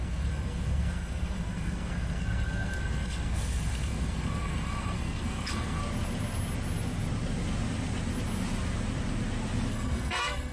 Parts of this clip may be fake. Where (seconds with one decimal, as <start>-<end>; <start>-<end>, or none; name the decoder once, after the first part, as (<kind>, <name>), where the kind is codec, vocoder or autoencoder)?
0.0-5.8 (codec, SNAC); 9.7-10.5